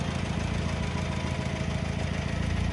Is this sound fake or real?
real